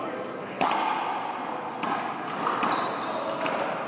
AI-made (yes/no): no